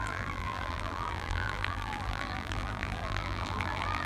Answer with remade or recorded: remade